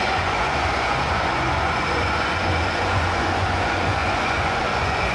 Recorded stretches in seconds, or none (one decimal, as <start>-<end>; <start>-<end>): none